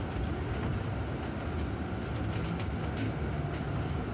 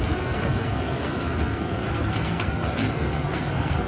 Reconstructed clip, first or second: second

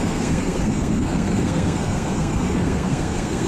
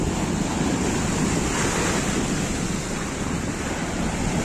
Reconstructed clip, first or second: first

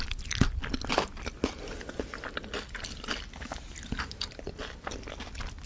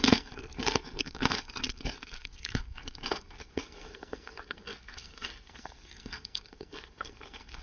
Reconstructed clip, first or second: second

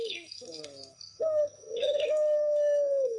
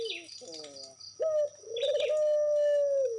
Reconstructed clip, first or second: first